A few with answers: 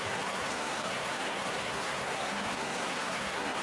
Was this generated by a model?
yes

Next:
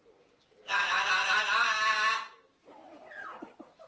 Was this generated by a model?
no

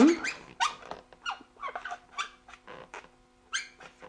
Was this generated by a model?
no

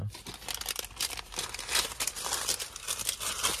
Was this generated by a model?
no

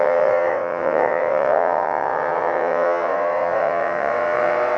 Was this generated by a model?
yes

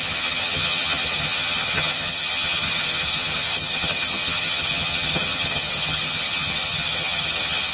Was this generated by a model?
yes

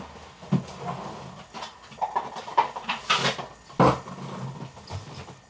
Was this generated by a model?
no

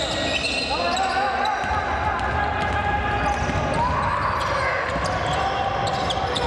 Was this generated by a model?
no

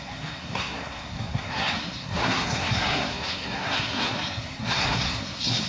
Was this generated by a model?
yes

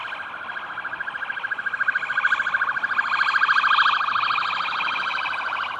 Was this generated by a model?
yes